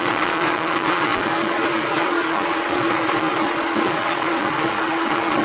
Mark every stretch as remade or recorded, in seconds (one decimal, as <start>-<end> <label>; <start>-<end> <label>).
0.0-5.4 remade